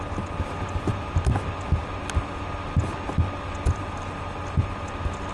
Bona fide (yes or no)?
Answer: yes